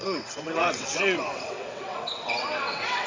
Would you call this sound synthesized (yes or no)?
yes